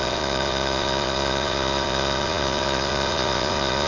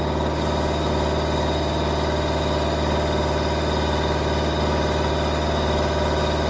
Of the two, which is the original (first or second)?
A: second